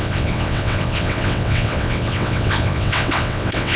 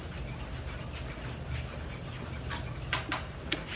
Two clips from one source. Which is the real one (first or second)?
second